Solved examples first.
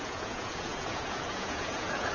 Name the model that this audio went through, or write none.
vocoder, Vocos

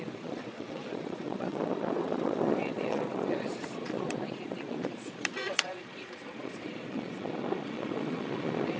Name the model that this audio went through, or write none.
vocoder, Vocos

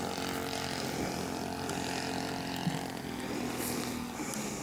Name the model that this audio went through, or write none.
none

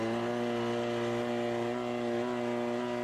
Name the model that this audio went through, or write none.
none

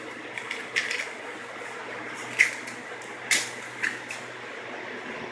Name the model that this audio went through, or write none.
none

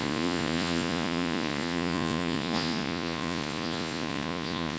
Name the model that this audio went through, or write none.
vocoder, Vocos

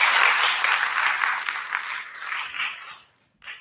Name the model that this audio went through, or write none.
none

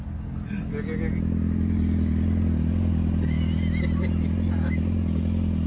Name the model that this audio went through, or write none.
none